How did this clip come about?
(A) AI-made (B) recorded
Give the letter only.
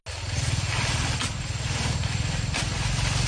B